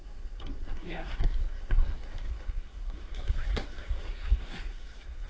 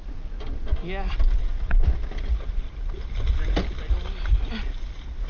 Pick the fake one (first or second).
first